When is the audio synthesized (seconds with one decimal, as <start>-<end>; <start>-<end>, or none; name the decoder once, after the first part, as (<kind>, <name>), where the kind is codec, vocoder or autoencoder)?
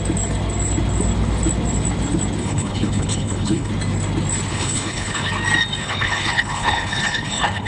2.4-3.7 (codec, HILCodec); 4.5-5.3; 5.8-7.7